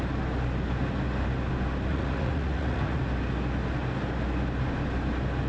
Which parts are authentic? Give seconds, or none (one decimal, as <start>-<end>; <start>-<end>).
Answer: 0.0-1.9; 3.0-5.5

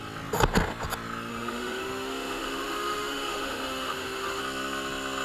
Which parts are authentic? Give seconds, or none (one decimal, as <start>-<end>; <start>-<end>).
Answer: 0.0-1.3; 4.4-5.2

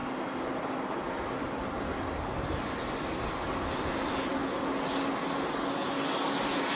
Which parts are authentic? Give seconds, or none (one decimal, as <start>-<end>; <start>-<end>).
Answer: 0.0-6.8

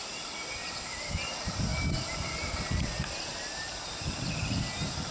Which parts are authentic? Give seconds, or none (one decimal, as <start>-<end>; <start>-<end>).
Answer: 0.0-5.1